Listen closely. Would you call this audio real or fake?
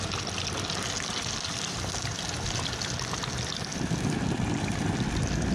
real